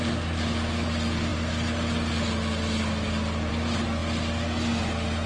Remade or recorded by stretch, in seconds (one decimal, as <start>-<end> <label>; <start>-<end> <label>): 0.0-5.3 recorded

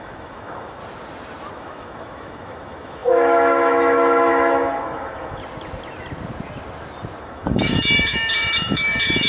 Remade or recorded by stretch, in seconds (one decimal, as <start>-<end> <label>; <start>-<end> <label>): 0.0-0.8 remade; 0.8-1.5 recorded; 1.5-5.4 remade; 5.4-7.2 recorded; 7.2-9.3 remade

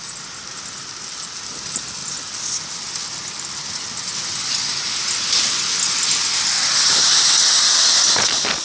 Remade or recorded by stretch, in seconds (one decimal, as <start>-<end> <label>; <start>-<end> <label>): 0.0-8.6 recorded

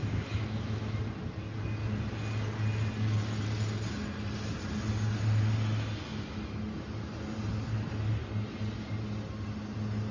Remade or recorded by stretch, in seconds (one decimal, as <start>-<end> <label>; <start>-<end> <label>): 0.0-1.0 remade; 1.0-10.1 recorded

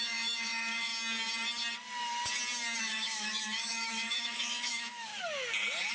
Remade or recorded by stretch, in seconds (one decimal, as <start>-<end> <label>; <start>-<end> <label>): 0.0-0.9 remade; 0.9-2.8 recorded; 2.8-5.1 remade; 5.1-5.9 recorded